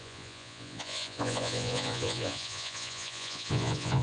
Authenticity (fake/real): fake